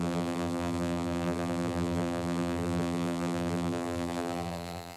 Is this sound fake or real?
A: fake